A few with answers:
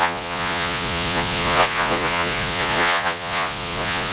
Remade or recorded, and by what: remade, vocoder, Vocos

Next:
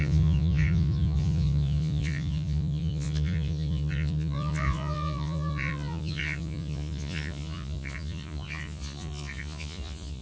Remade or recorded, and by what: remade, vocoder, Vocos